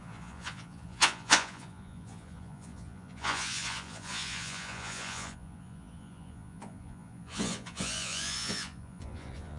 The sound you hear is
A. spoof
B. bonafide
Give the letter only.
A